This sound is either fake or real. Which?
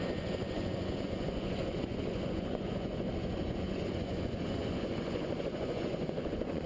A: fake